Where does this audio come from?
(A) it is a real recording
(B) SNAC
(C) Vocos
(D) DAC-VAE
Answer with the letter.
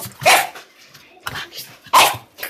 A